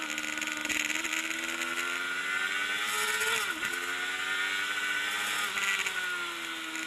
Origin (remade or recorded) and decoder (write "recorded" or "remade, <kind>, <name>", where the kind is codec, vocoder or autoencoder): recorded